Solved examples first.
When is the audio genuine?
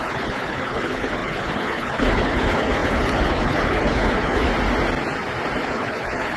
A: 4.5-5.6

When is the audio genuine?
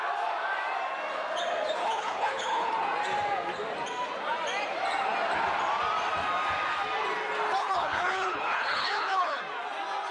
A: 0.0-1.8; 2.7-7.6; 9.4-10.1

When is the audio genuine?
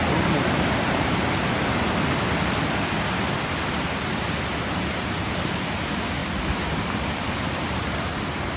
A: 0.0-8.6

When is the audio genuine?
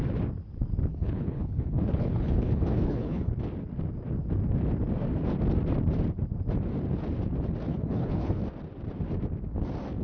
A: 0.0-0.9; 3.3-7.7; 8.4-10.0